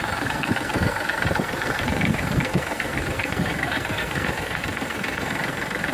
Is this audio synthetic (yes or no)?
yes